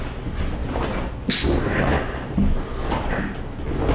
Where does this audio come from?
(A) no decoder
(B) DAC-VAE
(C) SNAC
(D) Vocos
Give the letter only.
A